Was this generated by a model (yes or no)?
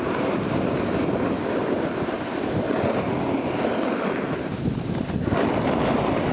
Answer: no